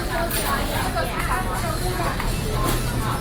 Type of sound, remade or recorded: recorded